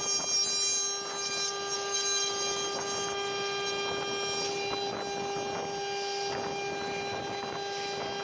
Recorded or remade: recorded